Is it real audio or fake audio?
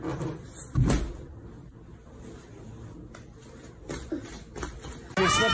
real